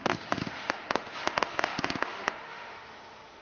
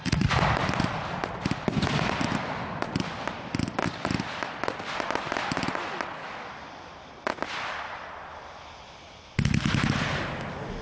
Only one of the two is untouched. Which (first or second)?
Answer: second